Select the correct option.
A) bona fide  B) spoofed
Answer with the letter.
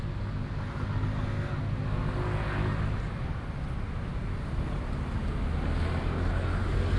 A